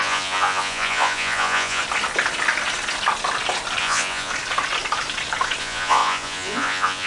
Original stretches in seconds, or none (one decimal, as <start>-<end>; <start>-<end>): 1.8-3.8; 4.3-5.6